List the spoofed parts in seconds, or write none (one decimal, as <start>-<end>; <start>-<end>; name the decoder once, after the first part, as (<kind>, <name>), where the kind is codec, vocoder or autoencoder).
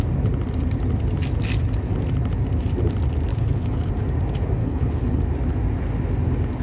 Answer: 3.3-3.9 (codec, HILCodec); 4.6-5.2